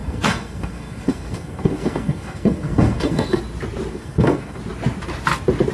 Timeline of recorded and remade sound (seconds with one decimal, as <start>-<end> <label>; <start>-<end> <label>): 0.0-3.4 remade; 3.4-3.9 recorded; 3.9-4.6 remade; 4.6-5.7 recorded